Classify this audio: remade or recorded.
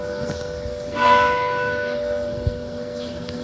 remade